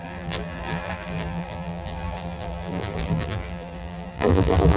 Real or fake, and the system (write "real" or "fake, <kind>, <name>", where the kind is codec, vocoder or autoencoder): fake, vocoder, BigVGAN v2